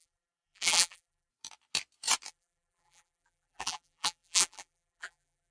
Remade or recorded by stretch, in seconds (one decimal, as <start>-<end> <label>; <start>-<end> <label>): 0.0-1.3 remade; 1.3-2.3 recorded; 2.3-5.5 remade